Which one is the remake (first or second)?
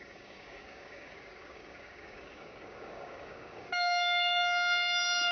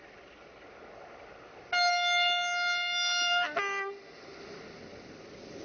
first